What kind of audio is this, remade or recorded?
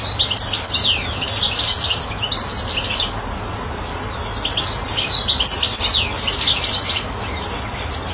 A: recorded